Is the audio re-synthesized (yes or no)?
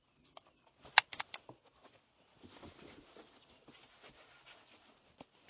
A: no